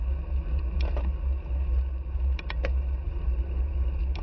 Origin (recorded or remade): recorded